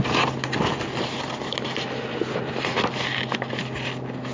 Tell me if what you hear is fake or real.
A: real